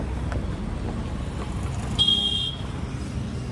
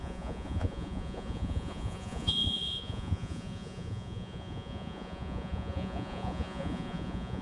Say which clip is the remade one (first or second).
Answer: second